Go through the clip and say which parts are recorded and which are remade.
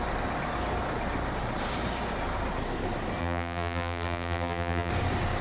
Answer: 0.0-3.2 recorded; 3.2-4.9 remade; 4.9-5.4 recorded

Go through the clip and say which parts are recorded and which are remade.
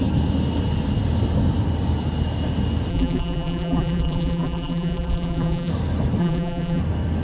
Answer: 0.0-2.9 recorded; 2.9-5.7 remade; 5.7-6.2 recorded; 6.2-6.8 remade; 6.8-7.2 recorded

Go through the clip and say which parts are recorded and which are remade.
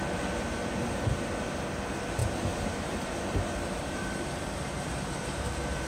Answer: 0.0-2.2 recorded; 2.2-5.9 remade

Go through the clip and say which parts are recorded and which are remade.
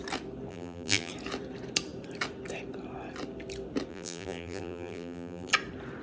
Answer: 0.0-0.5 recorded; 0.5-1.1 remade; 1.1-3.9 recorded; 3.9-5.5 remade; 5.5-6.0 recorded